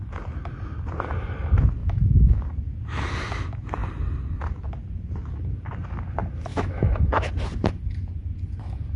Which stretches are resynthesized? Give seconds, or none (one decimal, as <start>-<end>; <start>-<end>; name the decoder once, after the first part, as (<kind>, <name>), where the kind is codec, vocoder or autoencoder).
1.8-2.4 (autoencoder, DAC-VAE); 6.5-7.3